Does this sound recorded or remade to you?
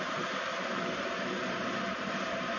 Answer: remade